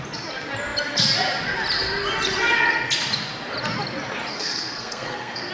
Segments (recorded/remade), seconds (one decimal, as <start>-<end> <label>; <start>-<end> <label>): 0.0-4.3 recorded; 4.3-5.5 remade